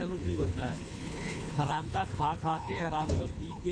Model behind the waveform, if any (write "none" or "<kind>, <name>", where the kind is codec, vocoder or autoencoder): codec, HILCodec